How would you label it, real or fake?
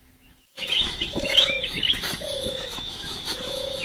fake